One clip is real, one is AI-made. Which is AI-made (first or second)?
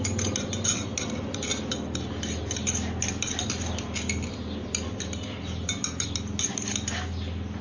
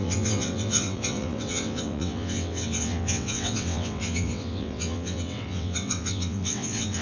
second